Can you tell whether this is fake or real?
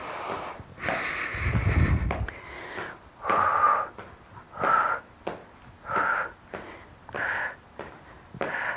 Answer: real